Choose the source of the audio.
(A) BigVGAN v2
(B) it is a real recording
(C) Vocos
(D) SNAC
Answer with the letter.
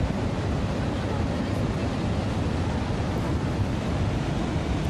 B